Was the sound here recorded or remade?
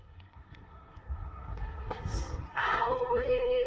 remade